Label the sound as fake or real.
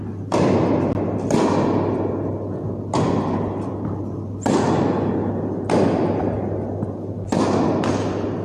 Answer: real